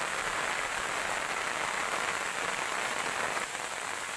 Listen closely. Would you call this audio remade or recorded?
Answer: recorded